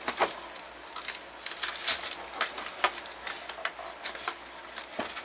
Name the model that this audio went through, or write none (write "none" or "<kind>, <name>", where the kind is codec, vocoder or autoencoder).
none